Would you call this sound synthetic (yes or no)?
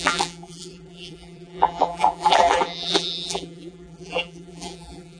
yes